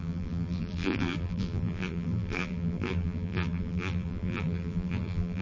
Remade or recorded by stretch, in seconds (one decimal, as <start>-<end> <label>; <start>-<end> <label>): 0.0-5.4 remade